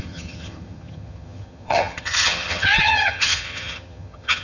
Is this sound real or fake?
fake